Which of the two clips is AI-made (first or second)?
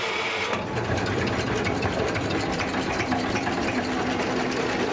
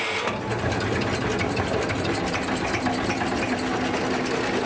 first